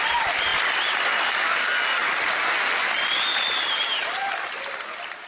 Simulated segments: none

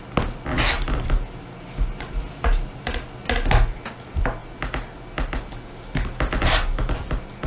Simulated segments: none

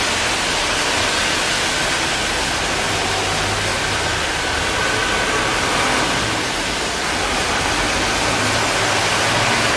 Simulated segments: none

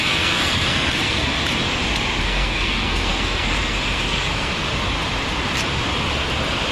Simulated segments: 0.0-1.3 (codec, SNAC); 2.2-4.5

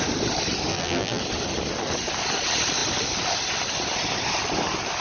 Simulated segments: 0.7-1.2 (vocoder, BigVGAN v2)

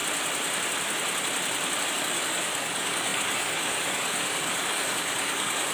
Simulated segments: 1.9-5.7 (codec, DAC)

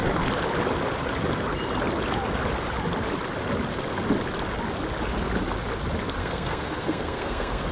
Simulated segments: 6.2-7.7 (codec, SNAC)

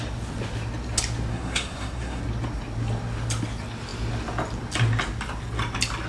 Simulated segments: 1.3-2.2 (codec, SNAC)